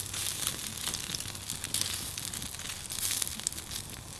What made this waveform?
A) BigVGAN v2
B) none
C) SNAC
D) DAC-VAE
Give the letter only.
B